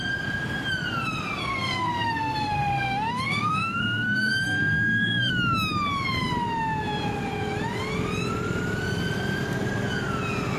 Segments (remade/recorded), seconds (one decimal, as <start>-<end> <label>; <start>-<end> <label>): 0.0-1.4 recorded; 1.4-5.3 remade; 5.3-10.6 recorded